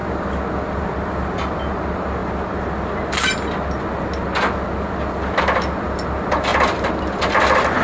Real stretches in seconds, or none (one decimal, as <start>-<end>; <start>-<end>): 0.0-7.8